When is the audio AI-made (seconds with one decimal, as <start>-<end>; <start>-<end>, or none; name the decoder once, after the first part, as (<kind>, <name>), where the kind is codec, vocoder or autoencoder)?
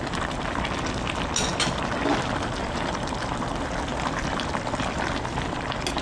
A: 3.9-5.6 (vocoder, BigVGAN v2)